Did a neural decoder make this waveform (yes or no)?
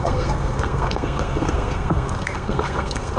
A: yes